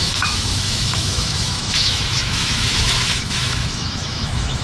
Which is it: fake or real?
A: fake